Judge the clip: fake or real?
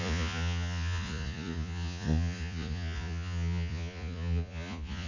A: fake